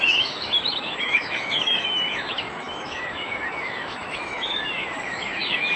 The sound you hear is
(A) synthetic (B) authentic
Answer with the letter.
A